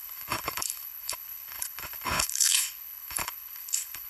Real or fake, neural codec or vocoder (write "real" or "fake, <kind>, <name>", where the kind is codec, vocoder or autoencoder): fake, codec, HILCodec